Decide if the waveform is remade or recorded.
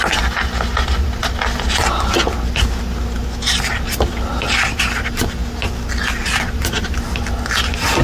recorded